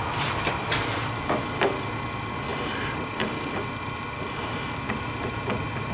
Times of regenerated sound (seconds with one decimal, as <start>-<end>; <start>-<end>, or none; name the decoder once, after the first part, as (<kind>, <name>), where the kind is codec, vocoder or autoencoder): none